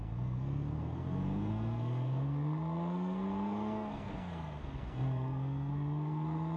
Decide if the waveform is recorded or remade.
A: remade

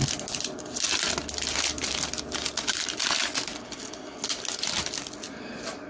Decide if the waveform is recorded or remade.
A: recorded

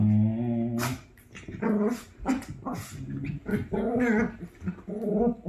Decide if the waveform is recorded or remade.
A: recorded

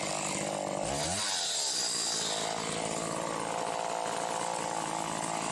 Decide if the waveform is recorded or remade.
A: recorded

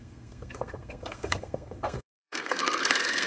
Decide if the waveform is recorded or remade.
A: remade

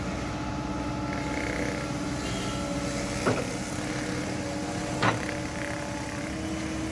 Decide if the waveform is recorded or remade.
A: recorded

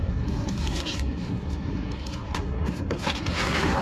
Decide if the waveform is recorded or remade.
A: remade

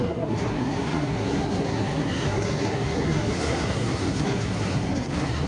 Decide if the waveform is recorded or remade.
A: remade